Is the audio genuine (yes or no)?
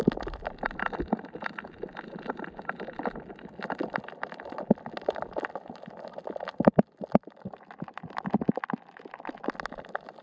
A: yes